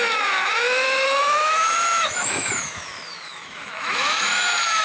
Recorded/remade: remade